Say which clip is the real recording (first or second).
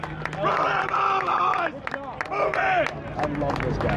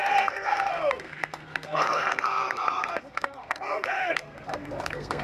first